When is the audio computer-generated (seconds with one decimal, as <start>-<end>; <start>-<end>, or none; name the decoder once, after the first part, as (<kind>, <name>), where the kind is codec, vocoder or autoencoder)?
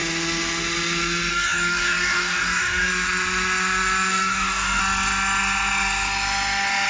1.3-2.9 (codec, DAC); 4.1-4.8